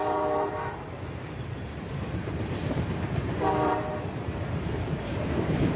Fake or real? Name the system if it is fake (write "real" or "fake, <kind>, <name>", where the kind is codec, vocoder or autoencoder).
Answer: fake, vocoder, BigVGAN v2